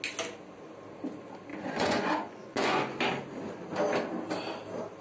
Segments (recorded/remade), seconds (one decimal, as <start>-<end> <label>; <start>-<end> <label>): 0.0-1.5 recorded; 1.5-3.0 remade; 3.0-5.0 recorded